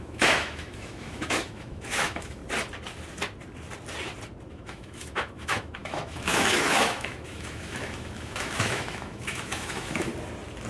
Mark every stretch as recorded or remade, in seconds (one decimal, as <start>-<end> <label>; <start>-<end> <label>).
0.0-2.4 remade; 2.4-4.5 recorded; 4.5-10.1 remade; 10.1-10.7 recorded

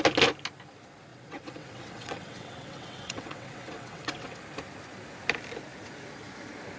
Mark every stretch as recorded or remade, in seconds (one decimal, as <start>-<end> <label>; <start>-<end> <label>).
0.0-1.1 recorded; 1.1-4.4 remade; 4.4-6.8 recorded

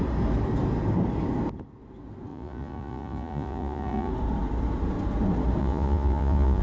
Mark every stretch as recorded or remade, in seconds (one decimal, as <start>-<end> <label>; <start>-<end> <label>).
0.0-2.3 recorded; 2.3-4.1 remade; 4.1-5.6 recorded; 5.6-6.6 remade

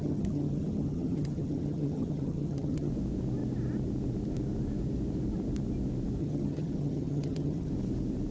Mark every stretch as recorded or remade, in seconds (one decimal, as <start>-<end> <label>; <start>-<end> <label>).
0.0-2.9 remade; 2.9-6.2 recorded; 6.2-7.7 remade; 7.7-8.3 recorded

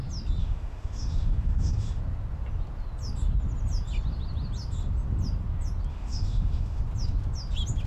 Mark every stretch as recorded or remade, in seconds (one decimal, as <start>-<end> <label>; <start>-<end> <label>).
0.0-0.4 recorded; 0.4-2.0 remade; 2.0-5.9 recorded; 5.9-6.8 remade; 6.8-7.9 recorded

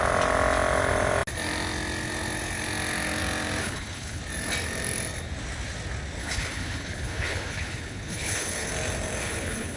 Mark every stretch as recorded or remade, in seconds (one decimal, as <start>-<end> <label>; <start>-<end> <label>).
0.0-3.6 recorded; 3.6-4.2 remade; 4.2-6.2 recorded; 6.2-8.7 remade; 8.7-9.2 recorded; 9.2-9.8 remade

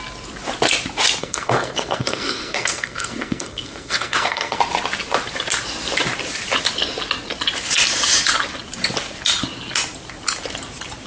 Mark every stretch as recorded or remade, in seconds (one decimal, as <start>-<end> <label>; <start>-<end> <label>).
0.0-1.2 recorded; 1.2-4.6 remade; 4.6-11.1 recorded

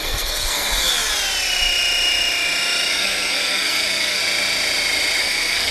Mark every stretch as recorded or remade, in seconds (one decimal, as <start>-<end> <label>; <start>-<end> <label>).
0.0-0.9 remade; 0.9-2.9 recorded; 2.9-4.2 remade; 4.2-5.2 recorded; 5.2-5.7 remade